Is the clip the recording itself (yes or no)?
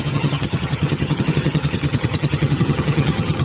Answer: no